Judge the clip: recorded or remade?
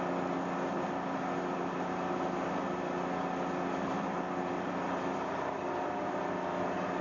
recorded